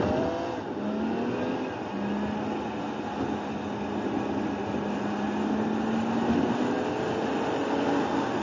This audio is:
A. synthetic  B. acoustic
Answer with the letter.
B